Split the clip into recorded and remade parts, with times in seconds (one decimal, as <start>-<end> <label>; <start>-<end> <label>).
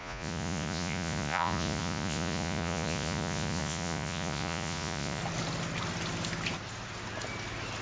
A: 0.0-5.2 remade; 5.2-7.8 recorded